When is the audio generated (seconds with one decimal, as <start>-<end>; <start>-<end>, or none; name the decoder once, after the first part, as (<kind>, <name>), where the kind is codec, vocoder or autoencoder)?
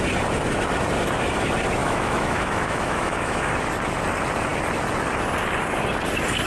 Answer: 1.8-3.5 (autoencoder, DAC-VAE)